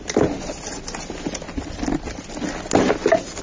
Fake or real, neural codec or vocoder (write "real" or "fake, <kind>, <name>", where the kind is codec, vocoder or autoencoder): real